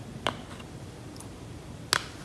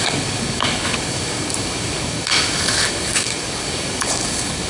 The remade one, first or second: second